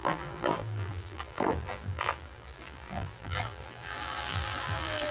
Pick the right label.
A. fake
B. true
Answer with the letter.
A